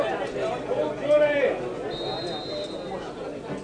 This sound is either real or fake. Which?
real